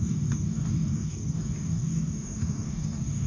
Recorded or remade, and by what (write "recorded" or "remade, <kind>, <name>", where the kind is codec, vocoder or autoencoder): remade, codec, DAC